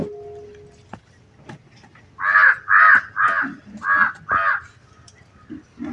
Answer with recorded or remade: recorded